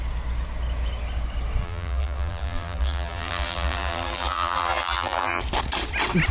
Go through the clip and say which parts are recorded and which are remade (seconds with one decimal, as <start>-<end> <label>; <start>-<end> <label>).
0.0-1.6 recorded; 1.6-5.4 remade; 5.4-6.3 recorded